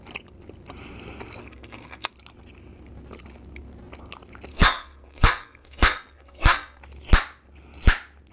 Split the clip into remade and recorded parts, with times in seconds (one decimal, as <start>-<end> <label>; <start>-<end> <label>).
0.0-1.4 recorded; 1.4-2.1 remade; 2.1-4.5 recorded; 4.5-6.8 remade; 6.8-8.3 recorded